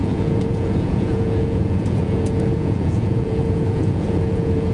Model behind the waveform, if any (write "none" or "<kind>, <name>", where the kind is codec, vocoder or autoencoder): vocoder, Vocos